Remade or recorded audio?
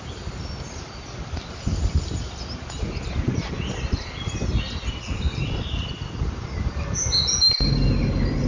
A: recorded